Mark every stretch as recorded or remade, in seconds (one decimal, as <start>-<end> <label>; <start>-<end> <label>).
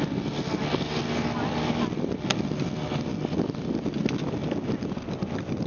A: 0.0-5.7 recorded